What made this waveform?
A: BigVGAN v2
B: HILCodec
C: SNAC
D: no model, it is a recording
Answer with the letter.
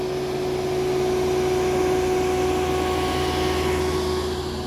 D